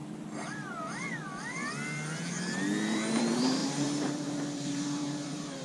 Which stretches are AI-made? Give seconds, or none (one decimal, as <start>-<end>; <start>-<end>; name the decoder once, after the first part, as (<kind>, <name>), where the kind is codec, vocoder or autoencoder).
2.8-5.6 (vocoder, BigVGAN v2)

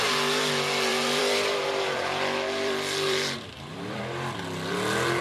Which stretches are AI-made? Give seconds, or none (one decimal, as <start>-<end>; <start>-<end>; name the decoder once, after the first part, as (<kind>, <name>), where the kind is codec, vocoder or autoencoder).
0.9-4.0 (vocoder, BigVGAN v2)

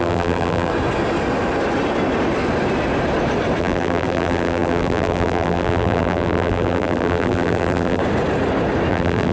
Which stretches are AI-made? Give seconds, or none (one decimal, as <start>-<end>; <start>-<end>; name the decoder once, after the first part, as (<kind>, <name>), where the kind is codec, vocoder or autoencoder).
0.0-0.7 (vocoder, BigVGAN v2); 3.6-8.0; 8.9-9.3